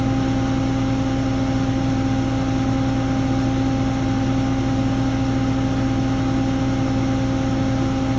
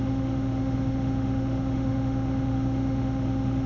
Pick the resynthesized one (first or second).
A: second